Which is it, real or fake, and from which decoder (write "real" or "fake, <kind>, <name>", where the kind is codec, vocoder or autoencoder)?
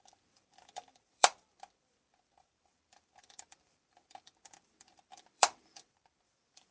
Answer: fake, vocoder, BigVGAN v2